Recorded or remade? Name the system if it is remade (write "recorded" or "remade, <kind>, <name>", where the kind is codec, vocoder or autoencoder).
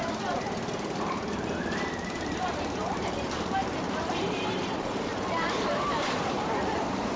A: remade, vocoder, BigVGAN v2